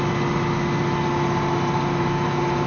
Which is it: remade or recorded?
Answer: recorded